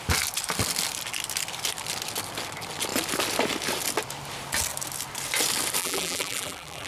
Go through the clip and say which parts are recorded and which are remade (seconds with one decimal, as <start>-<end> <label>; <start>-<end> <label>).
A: 0.0-5.8 recorded; 5.8-6.9 remade